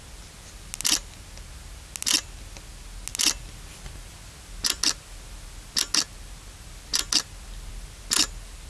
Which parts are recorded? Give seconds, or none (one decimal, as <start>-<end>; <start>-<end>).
0.0-8.7